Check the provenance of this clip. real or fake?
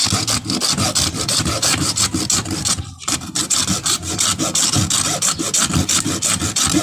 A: real